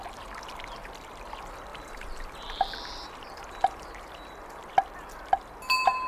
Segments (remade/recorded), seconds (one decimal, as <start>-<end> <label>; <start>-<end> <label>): 0.0-1.7 recorded; 1.7-4.7 remade; 4.7-6.1 recorded